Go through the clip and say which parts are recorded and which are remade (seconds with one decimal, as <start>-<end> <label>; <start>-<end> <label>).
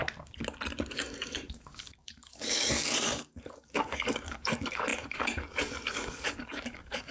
0.0-0.9 recorded; 0.9-7.1 remade